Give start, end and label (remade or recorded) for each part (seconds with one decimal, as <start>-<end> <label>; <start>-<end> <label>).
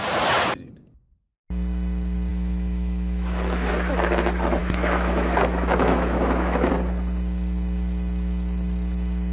0.0-2.3 recorded; 2.3-3.7 remade; 3.7-4.6 recorded; 4.6-6.7 remade; 6.7-9.3 recorded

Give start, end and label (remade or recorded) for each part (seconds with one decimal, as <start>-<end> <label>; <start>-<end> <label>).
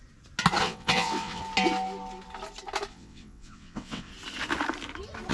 0.0-0.6 recorded; 0.6-1.4 remade; 1.4-2.9 recorded; 2.9-4.1 remade; 4.1-5.3 recorded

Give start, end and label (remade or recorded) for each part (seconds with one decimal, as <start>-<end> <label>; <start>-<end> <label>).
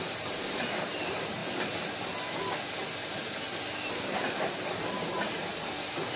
0.0-1.4 remade; 1.4-3.9 recorded; 3.9-5.5 remade; 5.5-6.2 recorded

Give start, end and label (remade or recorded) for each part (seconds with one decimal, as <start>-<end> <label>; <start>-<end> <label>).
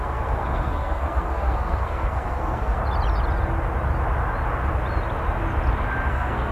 0.0-2.8 remade; 2.8-6.1 recorded; 6.1-6.5 remade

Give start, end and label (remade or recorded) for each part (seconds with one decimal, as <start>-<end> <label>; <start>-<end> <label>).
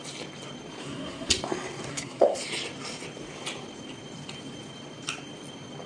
0.0-0.8 recorded; 0.8-1.3 remade; 1.3-1.9 recorded; 1.9-2.4 remade; 2.4-5.9 recorded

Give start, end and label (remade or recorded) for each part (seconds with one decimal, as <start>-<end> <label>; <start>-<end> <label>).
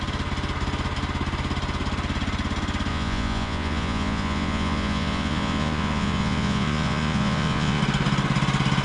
0.0-2.9 recorded; 2.9-7.8 remade; 7.8-8.8 recorded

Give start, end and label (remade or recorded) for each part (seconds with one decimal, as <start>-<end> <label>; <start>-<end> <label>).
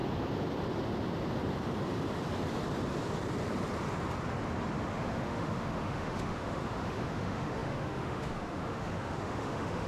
0.0-4.9 recorded; 4.9-9.9 remade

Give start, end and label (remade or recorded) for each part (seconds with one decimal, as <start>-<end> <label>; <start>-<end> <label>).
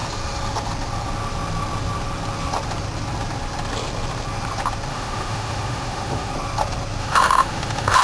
0.0-4.9 recorded; 4.9-6.3 remade; 6.3-7.0 recorded; 7.0-8.0 remade